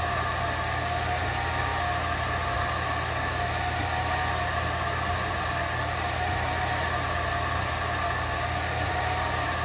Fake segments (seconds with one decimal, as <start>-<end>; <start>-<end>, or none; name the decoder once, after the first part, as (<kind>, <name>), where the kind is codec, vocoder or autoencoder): none